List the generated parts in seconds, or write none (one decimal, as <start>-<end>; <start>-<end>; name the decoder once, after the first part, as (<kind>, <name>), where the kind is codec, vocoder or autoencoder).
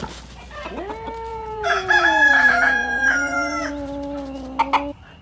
1.3-3.7 (vocoder, Vocos)